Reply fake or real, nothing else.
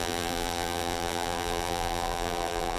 fake